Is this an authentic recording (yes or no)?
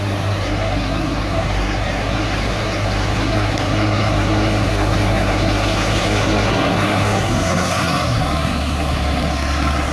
no